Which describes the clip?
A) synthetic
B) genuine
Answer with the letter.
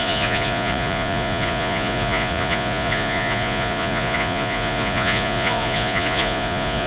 A